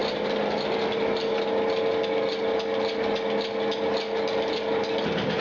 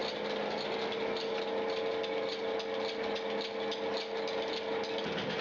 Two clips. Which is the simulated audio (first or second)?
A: first